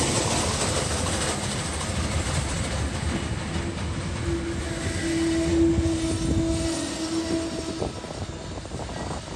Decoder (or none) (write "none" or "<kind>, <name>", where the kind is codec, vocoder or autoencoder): none